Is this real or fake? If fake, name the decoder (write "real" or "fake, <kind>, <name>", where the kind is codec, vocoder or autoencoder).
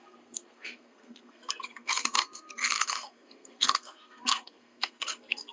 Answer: fake, codec, SNAC